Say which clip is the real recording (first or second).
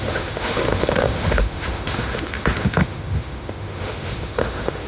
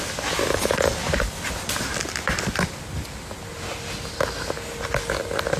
second